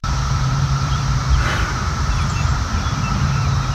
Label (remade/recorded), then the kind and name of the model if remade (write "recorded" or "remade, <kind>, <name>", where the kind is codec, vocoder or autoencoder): remade, vocoder, BigVGAN v2